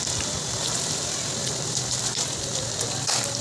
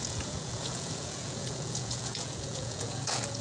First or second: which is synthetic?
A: second